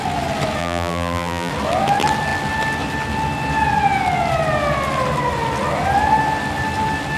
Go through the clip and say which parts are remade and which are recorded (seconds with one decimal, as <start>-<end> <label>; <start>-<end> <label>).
0.0-0.6 recorded; 0.6-1.5 remade; 1.5-7.2 recorded